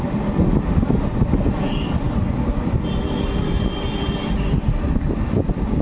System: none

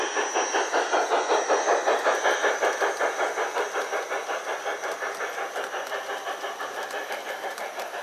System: none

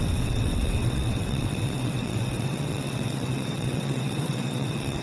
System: vocoder, WaveNeXt